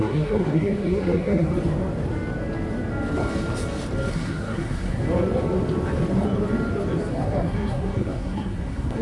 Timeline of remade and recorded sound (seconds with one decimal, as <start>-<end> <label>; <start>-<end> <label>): 0.0-1.5 remade; 1.5-4.1 recorded; 4.1-5.0 remade; 5.0-7.1 recorded; 7.1-9.0 remade